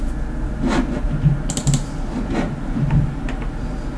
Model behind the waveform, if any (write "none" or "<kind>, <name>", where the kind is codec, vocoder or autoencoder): none